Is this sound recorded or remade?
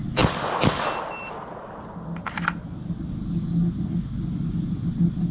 recorded